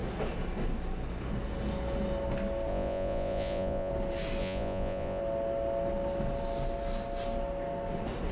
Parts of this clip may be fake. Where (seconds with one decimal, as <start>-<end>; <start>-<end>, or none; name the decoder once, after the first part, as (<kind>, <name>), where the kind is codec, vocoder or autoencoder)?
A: 2.7-3.9 (vocoder, Vocos); 4.4-5.2